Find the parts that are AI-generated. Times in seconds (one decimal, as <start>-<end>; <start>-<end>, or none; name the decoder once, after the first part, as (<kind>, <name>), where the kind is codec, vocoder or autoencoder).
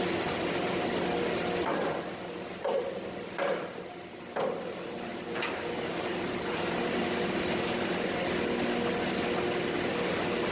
5.1-7.0 (vocoder, BigVGAN v2)